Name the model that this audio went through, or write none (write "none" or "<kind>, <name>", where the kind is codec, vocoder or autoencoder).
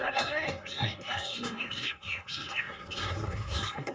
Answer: codec, SNAC